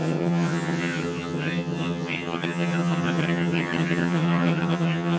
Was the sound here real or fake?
fake